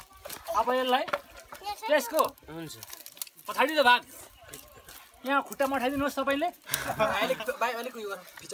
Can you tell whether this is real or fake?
real